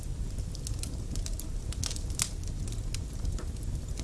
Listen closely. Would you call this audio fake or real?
real